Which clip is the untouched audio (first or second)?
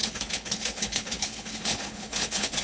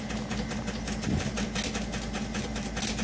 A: second